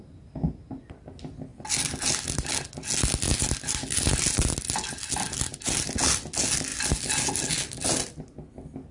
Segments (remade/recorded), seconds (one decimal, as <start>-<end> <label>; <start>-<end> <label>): 0.0-8.9 recorded